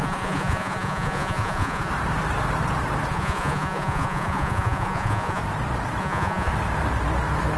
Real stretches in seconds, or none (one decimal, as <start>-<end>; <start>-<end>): 1.9-3.1; 5.4-6.0; 6.5-7.6